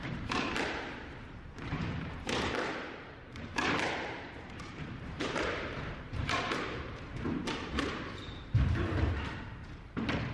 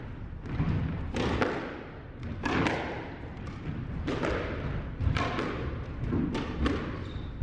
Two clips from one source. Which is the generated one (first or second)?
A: first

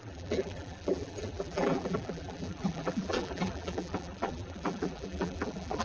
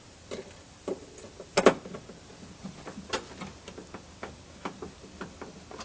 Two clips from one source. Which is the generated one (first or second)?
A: first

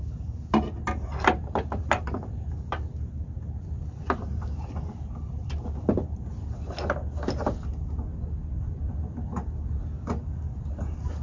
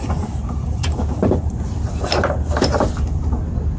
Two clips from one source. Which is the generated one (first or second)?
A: second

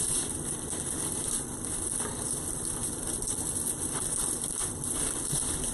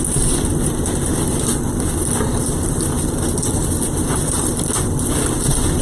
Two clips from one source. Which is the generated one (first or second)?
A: first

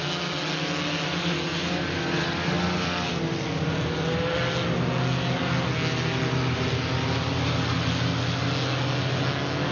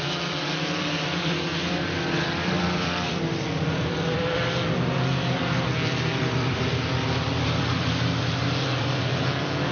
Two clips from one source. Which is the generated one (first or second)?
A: second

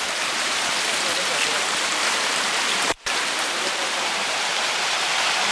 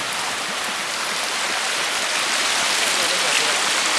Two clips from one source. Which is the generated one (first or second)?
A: first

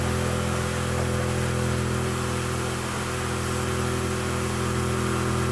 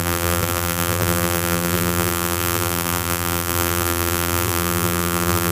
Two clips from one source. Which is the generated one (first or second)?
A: second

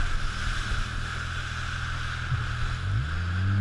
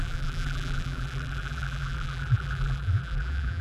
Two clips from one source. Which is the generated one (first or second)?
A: second